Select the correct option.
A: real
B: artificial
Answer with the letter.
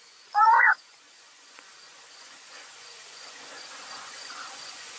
B